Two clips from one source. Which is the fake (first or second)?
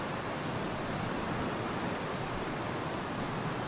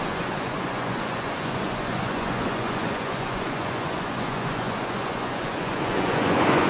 second